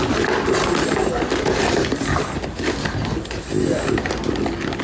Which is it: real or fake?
real